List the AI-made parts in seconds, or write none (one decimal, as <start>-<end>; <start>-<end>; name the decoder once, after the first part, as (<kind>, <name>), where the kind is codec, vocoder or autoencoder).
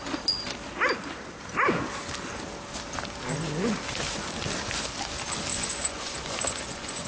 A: 5.5-7.1 (vocoder, Vocos)